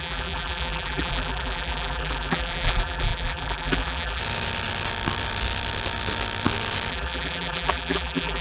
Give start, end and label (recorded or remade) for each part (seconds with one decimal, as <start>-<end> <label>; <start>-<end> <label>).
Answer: 0.0-4.2 remade; 4.2-6.9 recorded; 6.9-8.4 remade